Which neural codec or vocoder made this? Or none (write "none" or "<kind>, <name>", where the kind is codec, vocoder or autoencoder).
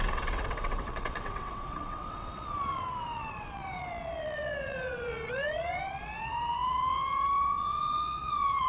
vocoder, WaveNeXt